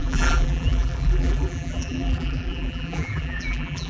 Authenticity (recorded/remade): remade